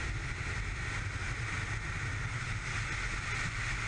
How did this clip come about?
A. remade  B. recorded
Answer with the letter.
B